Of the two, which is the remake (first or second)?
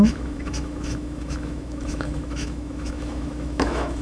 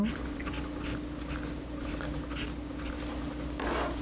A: first